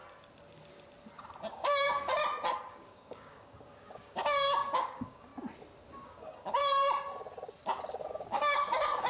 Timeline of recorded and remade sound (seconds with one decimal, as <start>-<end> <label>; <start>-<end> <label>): 0.0-1.5 recorded; 1.5-2.2 remade; 2.2-2.7 recorded; 2.7-5.3 remade; 5.3-5.9 recorded; 5.9-6.6 remade; 6.6-8.1 recorded; 8.1-9.1 remade